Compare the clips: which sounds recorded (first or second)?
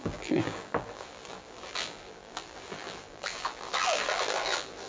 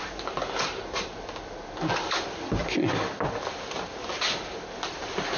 second